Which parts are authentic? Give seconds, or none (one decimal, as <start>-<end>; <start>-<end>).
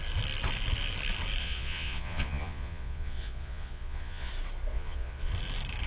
0.0-1.4; 4.3-4.7; 5.3-5.9